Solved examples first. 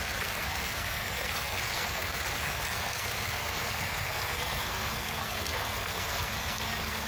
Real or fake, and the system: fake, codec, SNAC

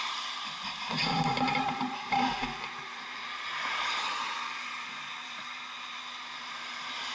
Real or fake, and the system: fake, vocoder, BigVGAN v2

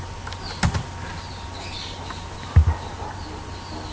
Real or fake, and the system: real